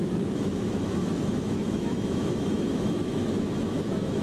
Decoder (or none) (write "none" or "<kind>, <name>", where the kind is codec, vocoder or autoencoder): autoencoder, DAC-VAE